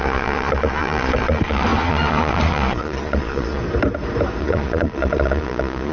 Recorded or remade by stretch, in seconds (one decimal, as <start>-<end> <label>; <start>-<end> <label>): 0.0-3.6 remade; 3.6-4.4 recorded; 4.4-5.9 remade